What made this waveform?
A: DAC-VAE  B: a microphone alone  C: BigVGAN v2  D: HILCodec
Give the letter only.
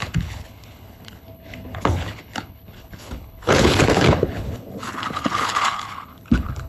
D